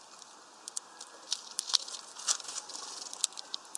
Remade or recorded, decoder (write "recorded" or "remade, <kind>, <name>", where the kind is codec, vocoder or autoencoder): recorded